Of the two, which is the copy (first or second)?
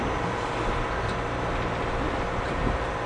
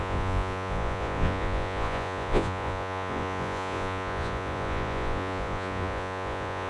second